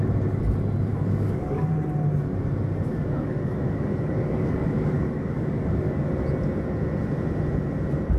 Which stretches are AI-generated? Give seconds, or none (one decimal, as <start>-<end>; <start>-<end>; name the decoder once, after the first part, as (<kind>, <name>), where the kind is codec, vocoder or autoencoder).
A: 0.9-1.7 (codec, DAC); 2.9-6.1